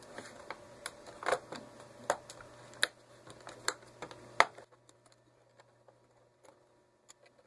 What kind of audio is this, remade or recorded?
recorded